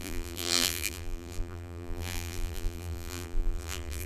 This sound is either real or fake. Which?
fake